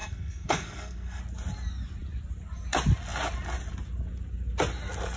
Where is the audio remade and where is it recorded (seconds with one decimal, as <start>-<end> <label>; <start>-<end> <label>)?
0.0-1.2 remade; 1.2-5.2 recorded